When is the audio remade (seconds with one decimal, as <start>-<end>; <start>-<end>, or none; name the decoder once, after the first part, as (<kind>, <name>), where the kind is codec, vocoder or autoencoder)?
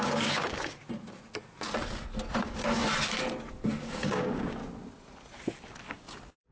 0.0-0.8 (codec, DAC); 2.4-2.8; 3.8-4.6; 5.9-6.5